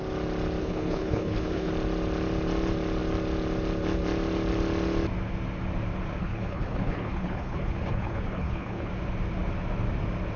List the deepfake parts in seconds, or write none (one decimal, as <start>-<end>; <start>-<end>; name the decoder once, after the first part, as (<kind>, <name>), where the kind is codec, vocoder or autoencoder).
0.6-1.7 (codec, HILCodec); 6.2-8.9